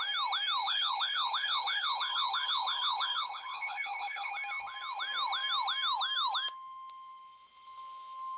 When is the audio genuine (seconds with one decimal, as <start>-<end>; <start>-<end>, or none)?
0.0-0.6; 4.3-8.4